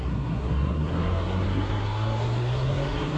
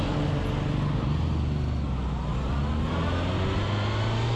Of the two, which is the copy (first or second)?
first